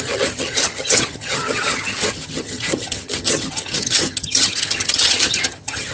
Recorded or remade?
remade